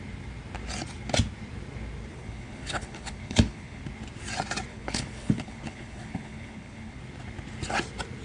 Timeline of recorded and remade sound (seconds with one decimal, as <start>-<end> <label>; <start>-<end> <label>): 0.0-2.1 recorded; 2.1-3.8 remade; 3.8-4.7 recorded; 4.7-7.0 remade; 7.0-8.2 recorded